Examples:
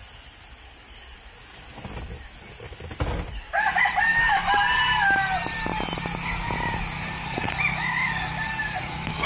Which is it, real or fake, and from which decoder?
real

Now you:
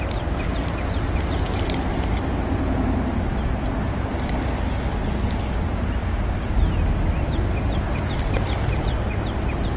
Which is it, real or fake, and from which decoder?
real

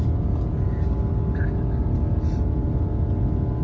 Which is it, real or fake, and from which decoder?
real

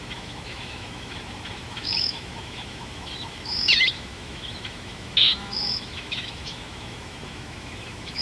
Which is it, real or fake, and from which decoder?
fake, autoencoder, DAC-VAE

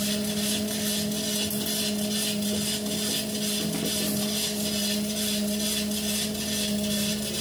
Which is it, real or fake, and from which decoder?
real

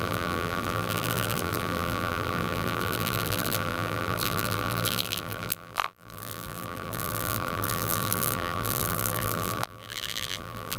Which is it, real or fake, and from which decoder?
fake, vocoder, BigVGAN v2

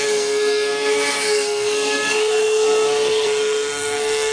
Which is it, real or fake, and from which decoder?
fake, codec, SNAC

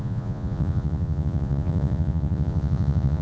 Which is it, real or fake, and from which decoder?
fake, vocoder, Vocos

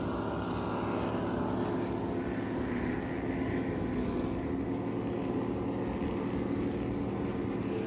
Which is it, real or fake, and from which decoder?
real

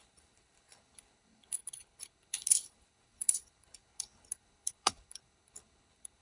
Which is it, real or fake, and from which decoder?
fake, codec, HILCodec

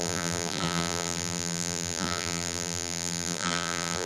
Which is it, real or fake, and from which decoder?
fake, vocoder, BigVGAN v2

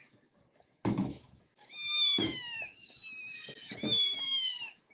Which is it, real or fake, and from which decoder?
fake, autoencoder, DAC-VAE